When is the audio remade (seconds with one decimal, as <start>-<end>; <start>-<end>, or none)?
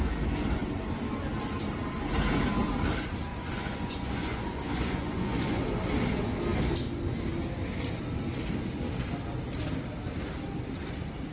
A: 3.3-5.8